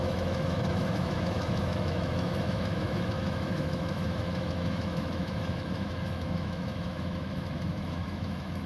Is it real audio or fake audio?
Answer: fake